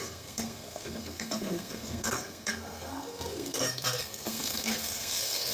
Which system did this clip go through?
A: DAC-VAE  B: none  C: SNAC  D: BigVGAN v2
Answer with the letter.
C